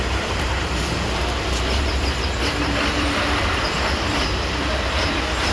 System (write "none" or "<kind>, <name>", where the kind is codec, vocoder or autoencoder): vocoder, BigVGAN v2